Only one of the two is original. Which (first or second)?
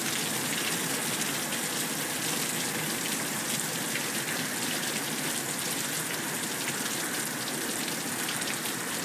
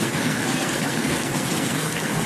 first